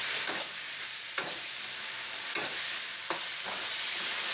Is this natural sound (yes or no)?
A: yes